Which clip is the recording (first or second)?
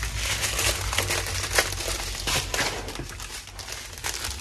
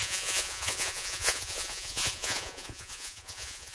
first